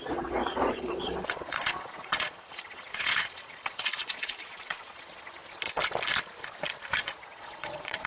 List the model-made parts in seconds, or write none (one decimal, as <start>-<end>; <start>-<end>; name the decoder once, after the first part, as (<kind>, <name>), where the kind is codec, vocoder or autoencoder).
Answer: 0.0-5.4 (vocoder, Vocos); 7.0-8.1